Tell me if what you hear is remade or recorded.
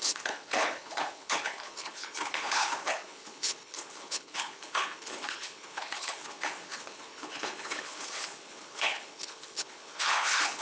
remade